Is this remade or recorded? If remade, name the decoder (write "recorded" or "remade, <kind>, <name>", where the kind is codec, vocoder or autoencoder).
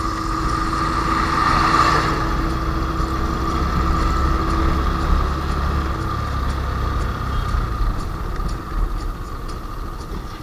recorded